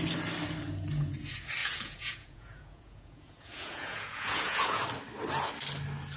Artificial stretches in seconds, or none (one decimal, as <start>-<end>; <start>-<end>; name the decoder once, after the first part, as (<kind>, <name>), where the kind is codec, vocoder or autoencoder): 1.6-4.8 (vocoder, Vocos)